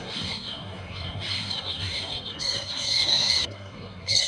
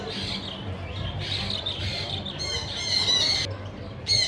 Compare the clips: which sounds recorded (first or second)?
second